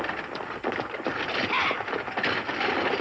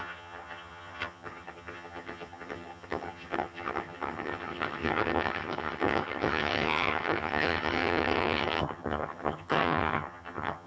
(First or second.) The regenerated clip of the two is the second